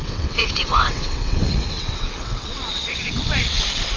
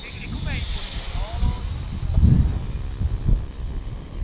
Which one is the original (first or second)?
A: second